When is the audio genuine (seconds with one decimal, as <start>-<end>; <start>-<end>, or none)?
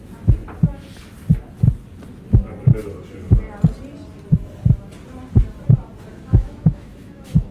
0.0-6.1